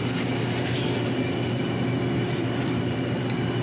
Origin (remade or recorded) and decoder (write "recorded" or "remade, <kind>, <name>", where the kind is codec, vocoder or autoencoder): recorded